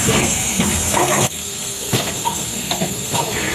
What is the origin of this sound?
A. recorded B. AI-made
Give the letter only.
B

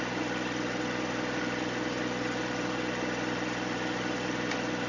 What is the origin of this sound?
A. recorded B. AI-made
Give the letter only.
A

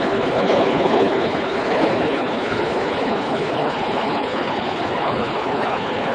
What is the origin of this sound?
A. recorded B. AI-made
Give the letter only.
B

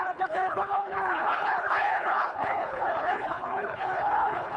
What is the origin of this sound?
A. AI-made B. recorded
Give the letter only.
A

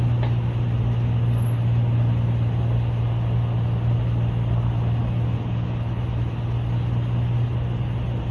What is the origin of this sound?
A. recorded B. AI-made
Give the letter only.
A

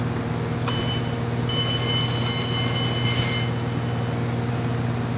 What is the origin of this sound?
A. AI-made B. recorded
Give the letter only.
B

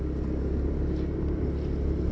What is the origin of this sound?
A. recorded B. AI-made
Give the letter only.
A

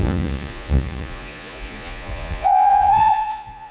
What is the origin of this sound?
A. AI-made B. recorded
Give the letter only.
A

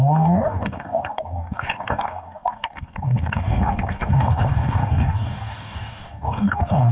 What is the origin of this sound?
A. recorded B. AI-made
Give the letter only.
B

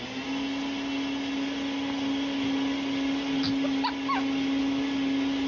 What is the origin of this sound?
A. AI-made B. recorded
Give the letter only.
B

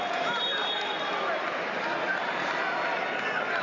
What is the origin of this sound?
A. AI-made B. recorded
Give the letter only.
B